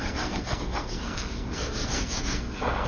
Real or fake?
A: fake